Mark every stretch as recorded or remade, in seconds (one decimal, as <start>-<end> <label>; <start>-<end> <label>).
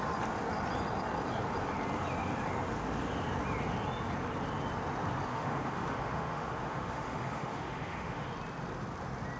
0.0-5.3 recorded; 5.3-8.3 remade; 8.3-9.4 recorded